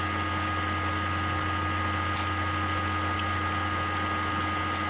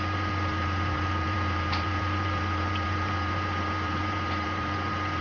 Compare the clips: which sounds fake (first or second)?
second